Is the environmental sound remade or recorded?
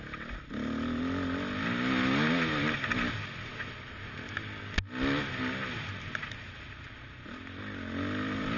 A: recorded